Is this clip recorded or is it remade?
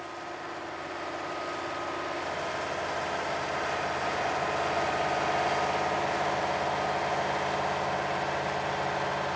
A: recorded